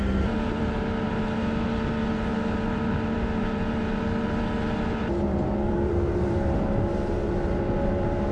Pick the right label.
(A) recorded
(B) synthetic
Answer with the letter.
B